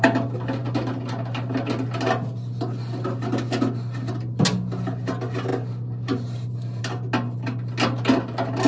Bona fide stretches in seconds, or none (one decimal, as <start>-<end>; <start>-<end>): 0.0-8.7